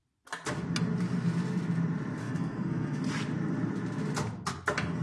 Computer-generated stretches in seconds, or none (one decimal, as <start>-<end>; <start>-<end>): 2.2-3.0